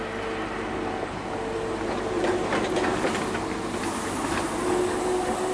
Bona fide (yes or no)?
yes